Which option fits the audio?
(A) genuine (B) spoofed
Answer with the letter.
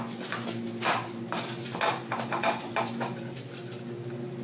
A